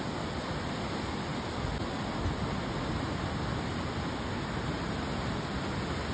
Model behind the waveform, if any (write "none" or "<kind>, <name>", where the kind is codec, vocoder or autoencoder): none